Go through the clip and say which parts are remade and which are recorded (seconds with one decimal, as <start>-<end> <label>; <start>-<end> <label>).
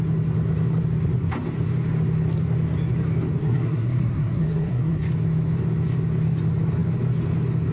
0.0-3.4 recorded; 3.4-5.0 remade; 5.0-7.7 recorded